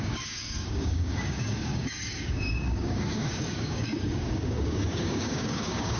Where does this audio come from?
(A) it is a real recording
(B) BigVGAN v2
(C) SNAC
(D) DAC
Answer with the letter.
D